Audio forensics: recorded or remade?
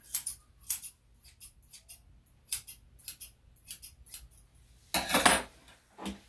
recorded